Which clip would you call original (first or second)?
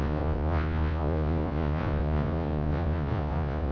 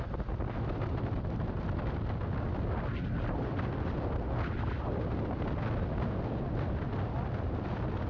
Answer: second